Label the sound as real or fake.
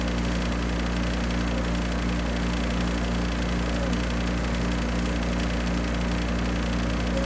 real